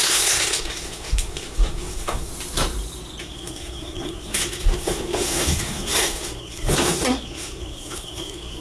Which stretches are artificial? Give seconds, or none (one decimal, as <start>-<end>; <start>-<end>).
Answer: 0.0-2.3; 3.2-8.6